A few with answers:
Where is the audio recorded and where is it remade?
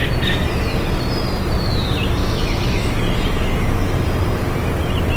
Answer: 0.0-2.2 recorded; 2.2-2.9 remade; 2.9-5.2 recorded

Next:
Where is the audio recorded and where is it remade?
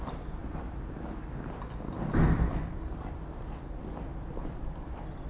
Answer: 0.0-5.3 recorded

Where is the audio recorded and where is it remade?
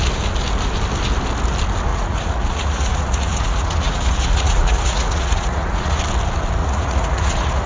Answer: 0.0-1.9 recorded; 1.9-6.0 remade; 6.0-6.6 recorded; 6.6-7.7 remade